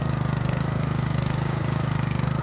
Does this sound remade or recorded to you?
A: remade